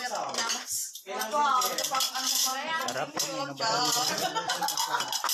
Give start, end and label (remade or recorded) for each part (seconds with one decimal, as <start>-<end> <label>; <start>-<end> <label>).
0.0-0.8 recorded; 0.8-2.1 remade; 2.1-5.3 recorded